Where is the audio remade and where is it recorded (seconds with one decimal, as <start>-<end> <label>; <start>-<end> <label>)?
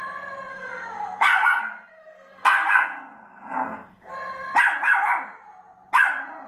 0.0-0.5 recorded; 0.5-4.1 remade; 4.1-6.5 recorded